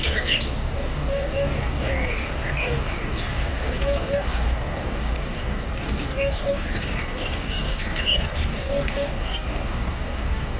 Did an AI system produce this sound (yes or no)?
yes